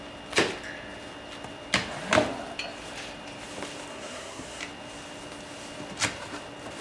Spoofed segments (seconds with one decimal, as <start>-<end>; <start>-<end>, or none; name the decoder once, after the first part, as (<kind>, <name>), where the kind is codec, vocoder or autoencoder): 3.9-4.6 (codec, SNAC)